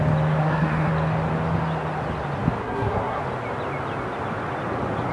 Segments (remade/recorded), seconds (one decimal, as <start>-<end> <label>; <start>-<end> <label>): 0.0-0.4 recorded; 0.4-0.9 remade; 0.9-2.6 recorded; 2.6-3.2 remade; 3.2-5.1 recorded